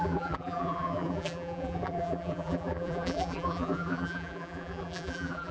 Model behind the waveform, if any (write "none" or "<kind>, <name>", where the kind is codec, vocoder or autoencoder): vocoder, BigVGAN v2